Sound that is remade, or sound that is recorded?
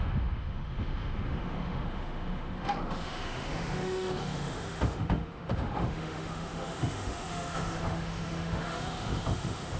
remade